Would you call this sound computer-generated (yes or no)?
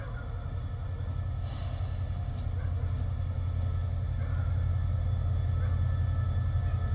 no